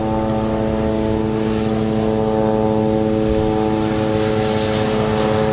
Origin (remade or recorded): recorded